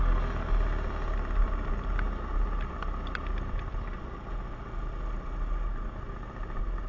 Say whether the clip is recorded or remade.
recorded